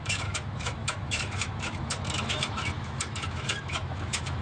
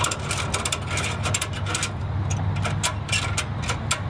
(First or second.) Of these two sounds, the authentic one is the second